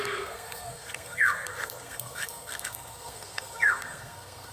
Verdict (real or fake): fake